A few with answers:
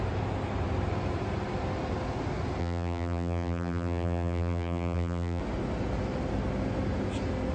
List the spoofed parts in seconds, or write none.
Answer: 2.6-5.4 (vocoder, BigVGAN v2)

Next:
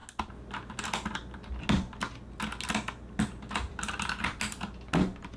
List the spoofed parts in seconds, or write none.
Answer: none

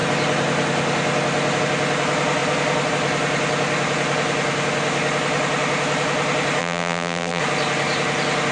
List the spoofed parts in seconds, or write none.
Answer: 6.6-7.4 (vocoder, BigVGAN v2)

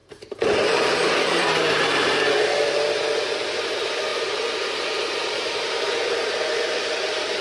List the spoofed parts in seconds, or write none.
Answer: 0.0-2.3 (vocoder, BigVGAN v2); 4.1-7.4